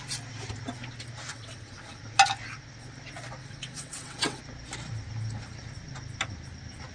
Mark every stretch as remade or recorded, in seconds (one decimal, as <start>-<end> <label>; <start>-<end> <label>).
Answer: 0.0-1.3 recorded; 1.3-2.0 remade; 2.0-3.4 recorded; 3.4-4.4 remade; 4.4-6.9 recorded